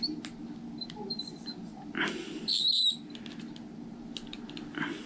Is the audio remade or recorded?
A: recorded